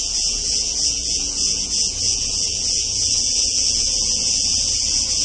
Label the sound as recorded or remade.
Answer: remade